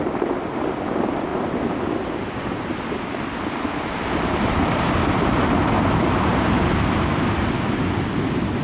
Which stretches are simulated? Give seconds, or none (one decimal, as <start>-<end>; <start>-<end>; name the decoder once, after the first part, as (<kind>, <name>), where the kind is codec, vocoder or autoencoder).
6.3-7.4 (vocoder, BigVGAN v2)